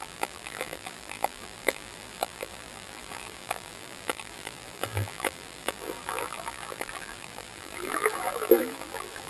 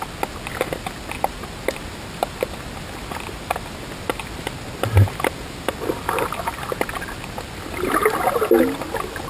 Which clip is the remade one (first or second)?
first